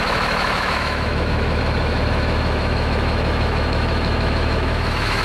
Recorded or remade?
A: remade